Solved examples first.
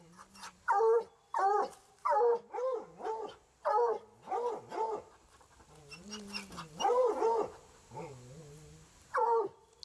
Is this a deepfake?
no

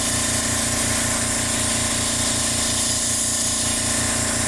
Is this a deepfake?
no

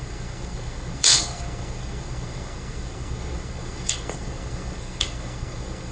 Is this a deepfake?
yes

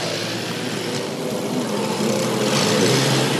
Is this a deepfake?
no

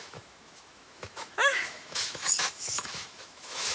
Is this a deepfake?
yes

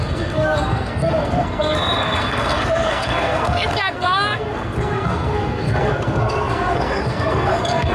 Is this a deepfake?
yes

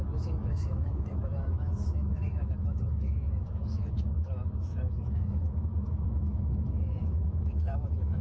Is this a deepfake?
yes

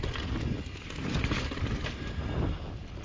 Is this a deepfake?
no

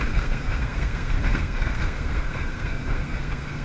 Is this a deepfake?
yes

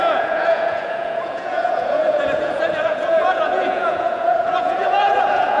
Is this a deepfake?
yes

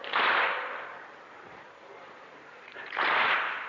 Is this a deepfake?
yes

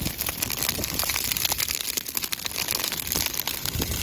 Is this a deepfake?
no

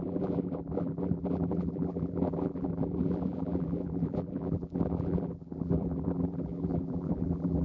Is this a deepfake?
yes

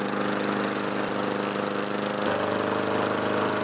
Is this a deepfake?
no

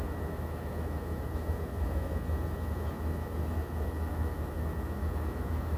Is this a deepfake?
yes